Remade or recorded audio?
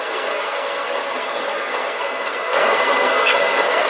remade